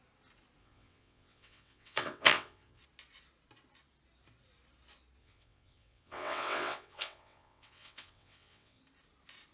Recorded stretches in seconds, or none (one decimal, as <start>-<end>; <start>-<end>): 0.0-0.6; 2.8-5.2; 8.8-9.5